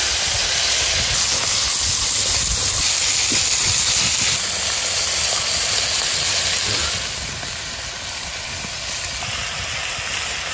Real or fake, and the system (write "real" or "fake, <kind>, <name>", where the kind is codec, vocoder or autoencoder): real